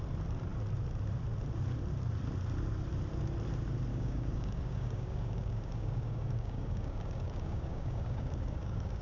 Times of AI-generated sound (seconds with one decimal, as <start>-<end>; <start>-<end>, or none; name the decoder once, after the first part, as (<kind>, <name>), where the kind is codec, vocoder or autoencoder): 3.9-9.0 (codec, DAC)